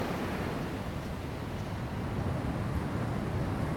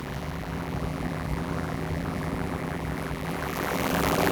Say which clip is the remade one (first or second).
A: second